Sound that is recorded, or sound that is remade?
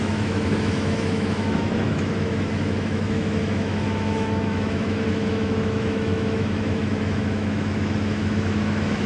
remade